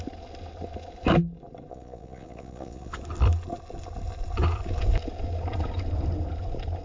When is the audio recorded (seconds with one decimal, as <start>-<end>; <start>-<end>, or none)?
0.0-1.7; 3.0-6.8